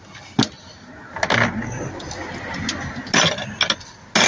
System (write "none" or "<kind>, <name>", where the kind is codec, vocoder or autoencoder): none